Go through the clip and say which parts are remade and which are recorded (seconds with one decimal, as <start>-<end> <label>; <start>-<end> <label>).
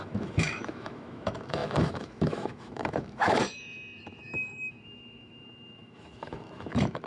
0.0-7.1 remade